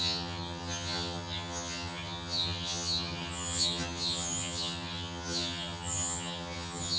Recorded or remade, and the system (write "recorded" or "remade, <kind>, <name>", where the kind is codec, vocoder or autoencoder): remade, vocoder, HiFi-GAN